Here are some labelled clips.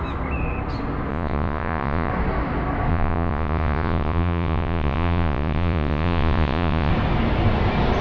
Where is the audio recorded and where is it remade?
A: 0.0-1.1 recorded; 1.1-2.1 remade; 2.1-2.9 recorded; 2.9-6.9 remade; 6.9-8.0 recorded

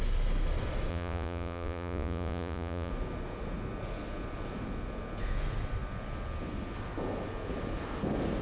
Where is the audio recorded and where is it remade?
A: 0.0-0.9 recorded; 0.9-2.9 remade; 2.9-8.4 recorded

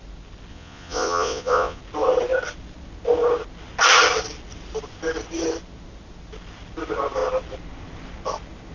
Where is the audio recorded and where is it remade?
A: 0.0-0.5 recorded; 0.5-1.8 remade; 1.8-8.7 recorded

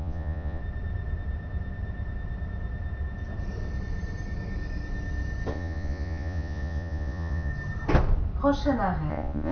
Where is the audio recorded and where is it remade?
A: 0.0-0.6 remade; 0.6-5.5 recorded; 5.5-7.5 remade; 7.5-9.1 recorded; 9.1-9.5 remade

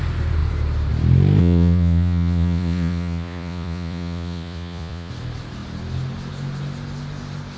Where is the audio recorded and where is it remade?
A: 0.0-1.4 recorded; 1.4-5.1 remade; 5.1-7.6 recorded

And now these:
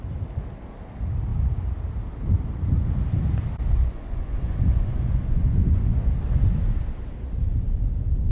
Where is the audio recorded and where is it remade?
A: 0.0-3.8 recorded; 3.8-6.1 remade; 6.1-8.3 recorded

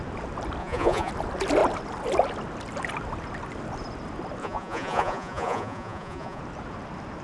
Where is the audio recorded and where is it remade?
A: 0.0-0.6 recorded; 0.6-1.1 remade; 1.1-4.4 recorded; 4.4-6.4 remade; 6.4-7.2 recorded

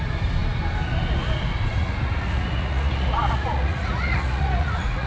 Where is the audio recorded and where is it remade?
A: 0.0-1.7 recorded; 1.7-5.1 remade